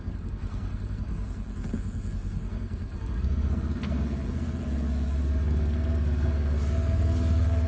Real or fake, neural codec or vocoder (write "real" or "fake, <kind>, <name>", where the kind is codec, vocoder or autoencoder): fake, codec, SNAC